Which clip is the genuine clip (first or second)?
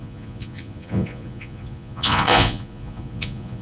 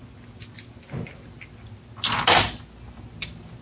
second